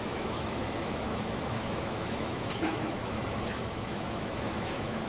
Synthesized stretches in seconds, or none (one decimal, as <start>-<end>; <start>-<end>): 0.0-5.1